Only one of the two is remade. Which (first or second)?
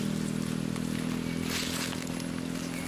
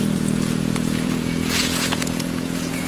second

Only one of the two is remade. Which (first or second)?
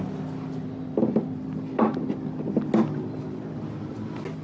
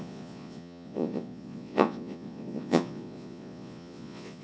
second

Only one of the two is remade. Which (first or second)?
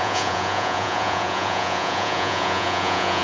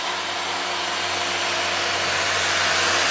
first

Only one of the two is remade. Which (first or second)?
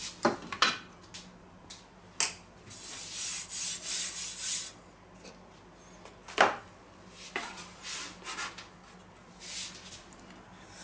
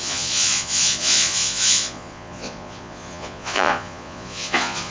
second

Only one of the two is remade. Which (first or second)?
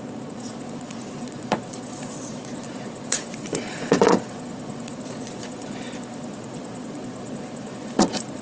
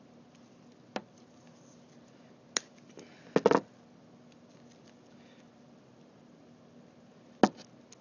first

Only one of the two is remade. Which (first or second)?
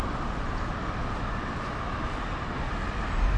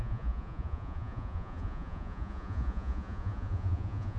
second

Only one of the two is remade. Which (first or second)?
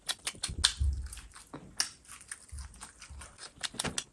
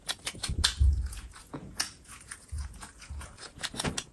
second